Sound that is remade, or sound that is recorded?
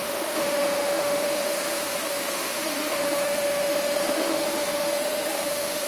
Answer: remade